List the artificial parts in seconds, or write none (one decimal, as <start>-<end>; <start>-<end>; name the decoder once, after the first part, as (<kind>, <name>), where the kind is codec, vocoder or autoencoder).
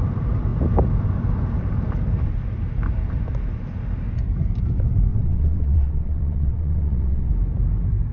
5.1-7.3 (vocoder, WaveNeXt)